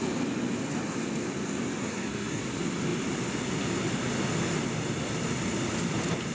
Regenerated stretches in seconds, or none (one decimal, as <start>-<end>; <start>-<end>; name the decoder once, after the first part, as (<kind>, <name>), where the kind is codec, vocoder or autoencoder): 1.8-2.4 (codec, SNAC)